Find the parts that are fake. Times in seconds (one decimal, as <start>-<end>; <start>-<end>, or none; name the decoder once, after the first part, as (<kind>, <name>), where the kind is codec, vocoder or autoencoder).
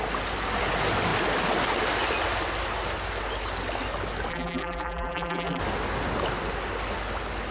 4.3-5.6 (vocoder, BigVGAN v2)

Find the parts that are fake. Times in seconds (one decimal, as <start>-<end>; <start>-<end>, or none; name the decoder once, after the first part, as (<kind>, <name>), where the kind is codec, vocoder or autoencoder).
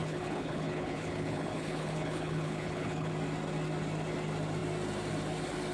0.0-3.1 (codec, HILCodec)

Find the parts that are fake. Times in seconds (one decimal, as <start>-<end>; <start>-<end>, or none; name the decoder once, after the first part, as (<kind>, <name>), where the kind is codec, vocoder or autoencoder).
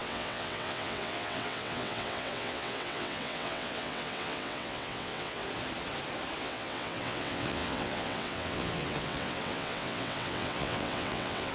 0.0-5.4 (vocoder, WaveNeXt); 6.4-11.5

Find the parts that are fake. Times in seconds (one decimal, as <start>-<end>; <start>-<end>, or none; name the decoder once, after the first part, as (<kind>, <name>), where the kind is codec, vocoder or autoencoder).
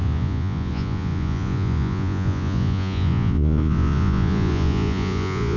0.0-5.6 (vocoder, Vocos)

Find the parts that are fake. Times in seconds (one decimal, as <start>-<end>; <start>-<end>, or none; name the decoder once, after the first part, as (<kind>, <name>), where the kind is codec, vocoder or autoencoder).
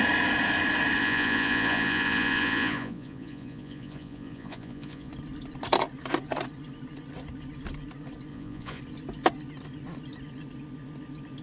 1.0-5.1 (vocoder, Vocos); 8.3-8.8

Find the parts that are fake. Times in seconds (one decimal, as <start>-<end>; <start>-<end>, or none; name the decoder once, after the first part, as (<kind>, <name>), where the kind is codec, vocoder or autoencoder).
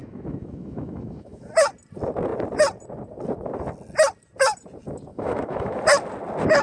0.0-1.5 (autoencoder, DAC-VAE); 5.1-5.8